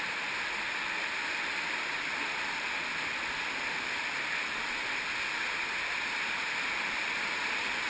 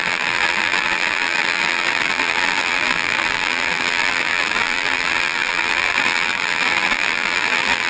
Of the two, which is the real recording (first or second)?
first